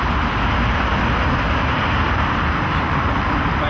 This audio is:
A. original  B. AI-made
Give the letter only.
A